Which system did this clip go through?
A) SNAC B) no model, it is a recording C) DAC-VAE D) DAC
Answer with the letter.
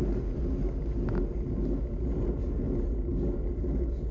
B